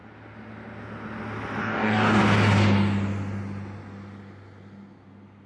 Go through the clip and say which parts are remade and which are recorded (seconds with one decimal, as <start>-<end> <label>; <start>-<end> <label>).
0.0-1.6 recorded; 1.6-2.2 remade; 2.2-5.5 recorded